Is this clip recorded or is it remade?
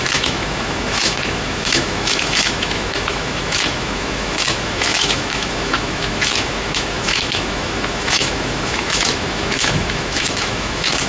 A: remade